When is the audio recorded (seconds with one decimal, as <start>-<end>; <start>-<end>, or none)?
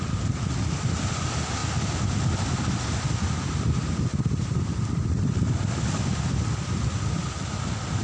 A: 0.0-8.0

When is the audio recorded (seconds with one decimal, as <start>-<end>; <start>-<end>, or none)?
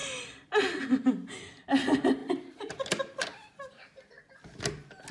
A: 0.0-5.1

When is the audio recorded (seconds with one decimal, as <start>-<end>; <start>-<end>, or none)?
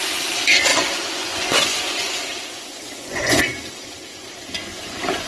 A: 0.0-0.7; 3.4-4.1